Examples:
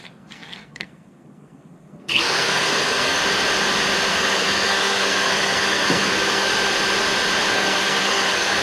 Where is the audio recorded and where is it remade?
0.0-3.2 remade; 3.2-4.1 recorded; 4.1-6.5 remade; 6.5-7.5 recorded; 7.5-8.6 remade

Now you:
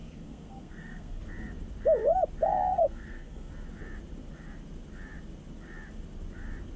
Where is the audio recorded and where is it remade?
0.0-1.2 remade; 1.2-2.5 recorded; 2.5-3.5 remade; 3.5-6.8 recorded

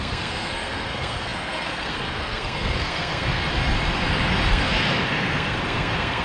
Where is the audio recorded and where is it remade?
0.0-3.4 remade; 3.4-4.5 recorded; 4.5-6.2 remade